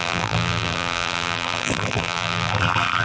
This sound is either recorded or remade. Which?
remade